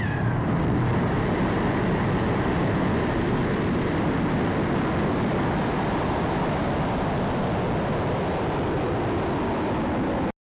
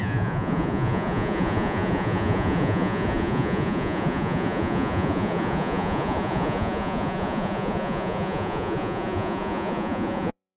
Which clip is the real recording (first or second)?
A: first